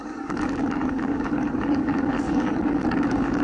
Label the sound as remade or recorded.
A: remade